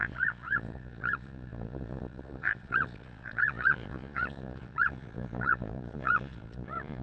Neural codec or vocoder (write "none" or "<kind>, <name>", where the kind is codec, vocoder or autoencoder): vocoder, Vocos